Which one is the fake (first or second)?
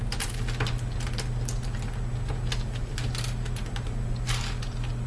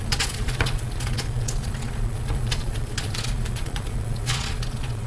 second